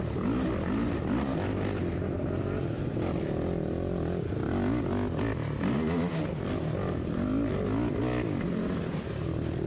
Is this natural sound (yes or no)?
yes